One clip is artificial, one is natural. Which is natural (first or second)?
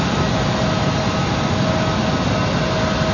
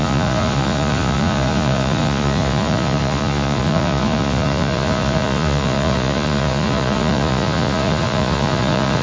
first